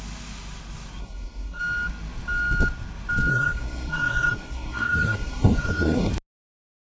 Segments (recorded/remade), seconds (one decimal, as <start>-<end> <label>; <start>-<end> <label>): 0.0-1.0 recorded; 1.0-1.6 remade; 1.6-3.3 recorded; 3.3-6.1 remade; 6.1-6.9 recorded